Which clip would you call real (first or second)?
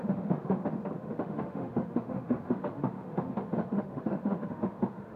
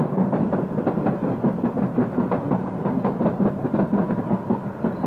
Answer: second